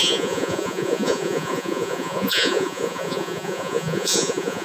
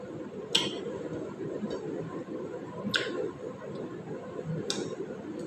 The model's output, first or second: first